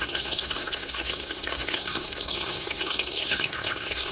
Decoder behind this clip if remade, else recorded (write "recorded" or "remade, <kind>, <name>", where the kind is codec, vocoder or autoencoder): remade, codec, SNAC